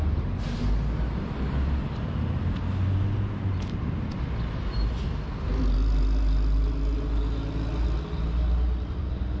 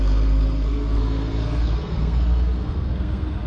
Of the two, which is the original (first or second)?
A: first